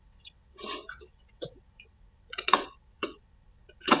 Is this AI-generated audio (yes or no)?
yes